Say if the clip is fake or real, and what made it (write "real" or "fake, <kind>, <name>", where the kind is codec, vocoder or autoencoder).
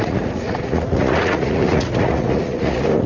fake, vocoder, Vocos